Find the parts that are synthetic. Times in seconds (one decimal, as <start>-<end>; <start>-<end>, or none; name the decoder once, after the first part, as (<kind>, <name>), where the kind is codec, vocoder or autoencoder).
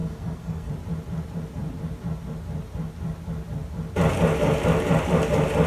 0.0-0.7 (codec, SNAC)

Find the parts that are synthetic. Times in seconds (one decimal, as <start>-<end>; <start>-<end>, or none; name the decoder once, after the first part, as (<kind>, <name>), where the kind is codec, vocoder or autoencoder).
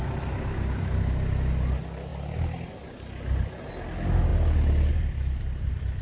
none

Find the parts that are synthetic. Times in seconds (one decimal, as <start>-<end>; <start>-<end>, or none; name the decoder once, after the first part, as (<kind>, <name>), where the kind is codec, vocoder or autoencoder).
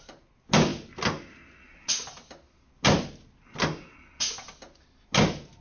none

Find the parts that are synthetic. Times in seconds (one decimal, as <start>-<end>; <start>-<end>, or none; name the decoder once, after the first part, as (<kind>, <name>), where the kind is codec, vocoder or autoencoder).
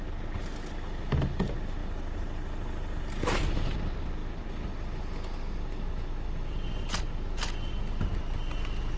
none